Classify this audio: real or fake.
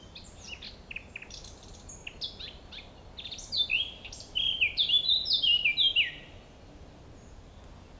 real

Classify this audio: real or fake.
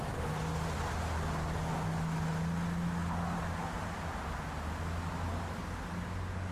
real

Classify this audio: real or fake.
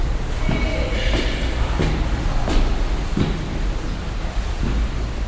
real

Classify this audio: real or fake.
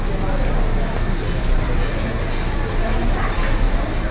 real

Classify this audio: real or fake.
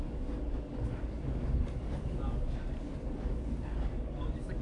fake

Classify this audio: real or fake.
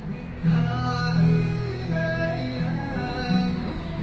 fake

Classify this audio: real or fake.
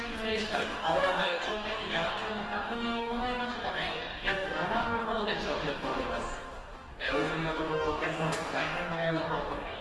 fake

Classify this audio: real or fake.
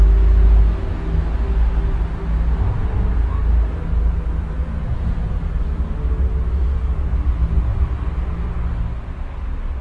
real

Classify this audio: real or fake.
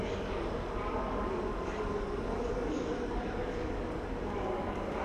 fake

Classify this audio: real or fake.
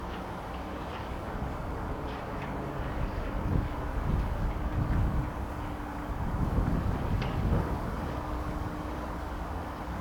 fake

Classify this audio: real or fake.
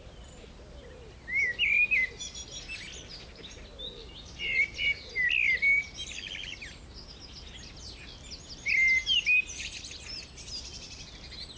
real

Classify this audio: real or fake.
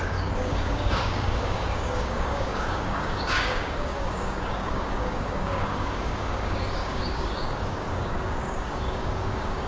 fake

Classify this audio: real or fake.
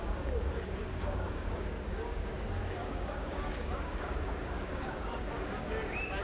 fake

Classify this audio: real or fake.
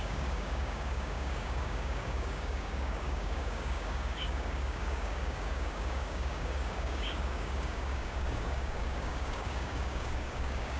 fake